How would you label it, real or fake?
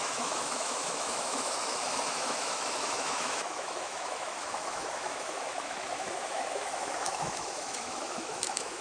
fake